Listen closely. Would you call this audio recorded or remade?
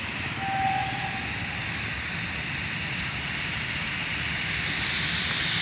recorded